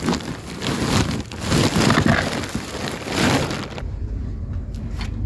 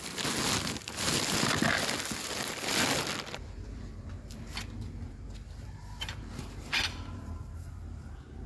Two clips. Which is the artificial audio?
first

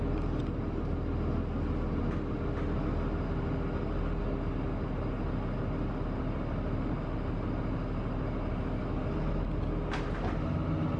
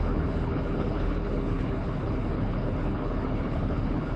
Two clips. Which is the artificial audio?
second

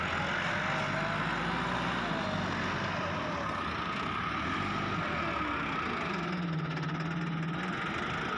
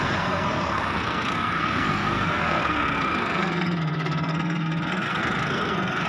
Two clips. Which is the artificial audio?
second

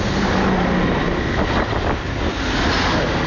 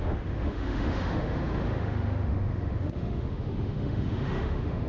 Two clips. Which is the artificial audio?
second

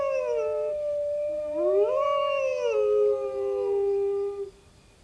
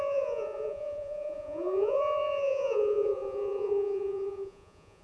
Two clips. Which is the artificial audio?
second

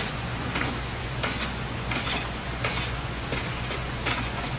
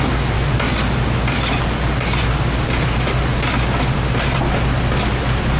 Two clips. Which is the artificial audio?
first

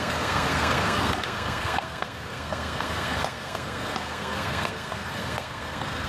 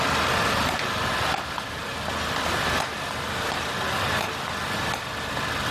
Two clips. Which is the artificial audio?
first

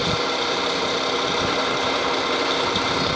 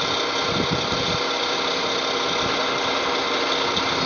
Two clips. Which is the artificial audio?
first